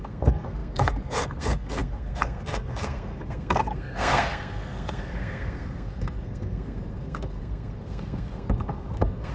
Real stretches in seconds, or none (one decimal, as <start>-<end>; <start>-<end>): none